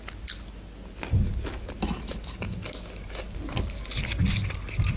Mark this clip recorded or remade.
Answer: recorded